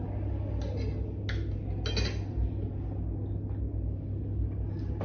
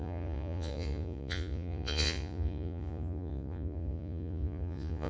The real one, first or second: first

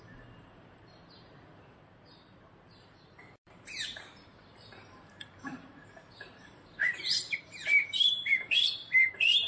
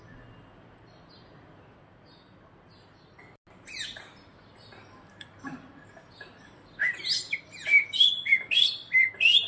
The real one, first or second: second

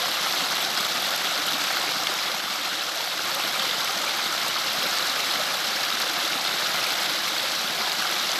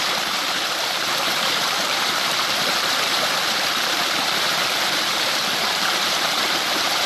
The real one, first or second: first